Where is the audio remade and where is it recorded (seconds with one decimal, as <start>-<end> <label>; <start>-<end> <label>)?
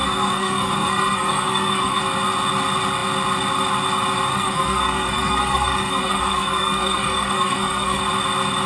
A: 0.0-2.0 remade; 2.0-4.3 recorded; 4.3-8.0 remade; 8.0-8.7 recorded